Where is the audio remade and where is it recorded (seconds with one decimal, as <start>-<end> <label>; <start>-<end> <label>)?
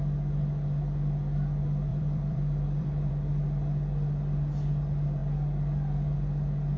0.0-1.9 recorded; 1.9-3.1 remade; 3.1-6.8 recorded